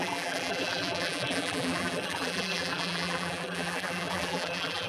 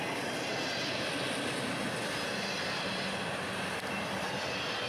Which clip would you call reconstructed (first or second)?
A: first